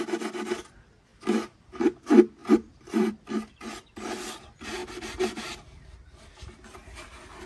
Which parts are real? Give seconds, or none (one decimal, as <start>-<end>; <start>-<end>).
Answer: 0.0-2.4; 3.1-4.8; 5.6-7.5

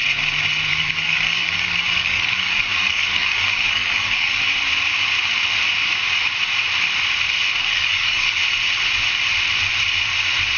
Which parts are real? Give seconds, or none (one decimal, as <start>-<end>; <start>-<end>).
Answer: 0.0-0.7; 4.4-7.6; 8.4-10.6

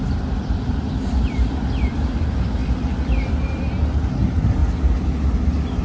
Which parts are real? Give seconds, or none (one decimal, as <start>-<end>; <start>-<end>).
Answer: 4.6-5.8

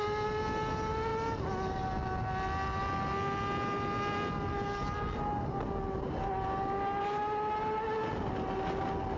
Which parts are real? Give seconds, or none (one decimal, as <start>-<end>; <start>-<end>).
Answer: 0.0-9.2

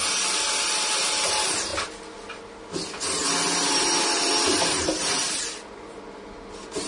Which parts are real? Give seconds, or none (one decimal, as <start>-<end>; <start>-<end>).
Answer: 0.0-6.9

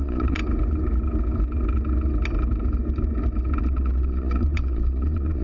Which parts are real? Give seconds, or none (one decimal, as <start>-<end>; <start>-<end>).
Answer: 0.4-3.6